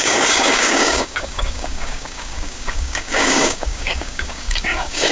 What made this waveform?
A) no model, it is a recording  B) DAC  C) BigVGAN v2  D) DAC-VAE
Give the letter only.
B